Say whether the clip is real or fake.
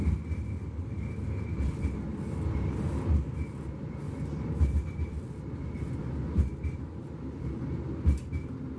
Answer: real